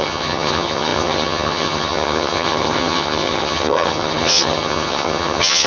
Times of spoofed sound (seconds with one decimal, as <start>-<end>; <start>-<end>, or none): 0.0-5.7